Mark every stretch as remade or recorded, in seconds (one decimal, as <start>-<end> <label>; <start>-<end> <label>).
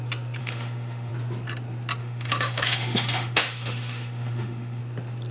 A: 0.0-0.4 recorded; 0.4-1.1 remade; 1.1-2.0 recorded; 2.0-4.8 remade; 4.8-5.3 recorded